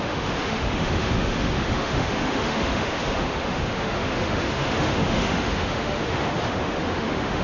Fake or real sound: fake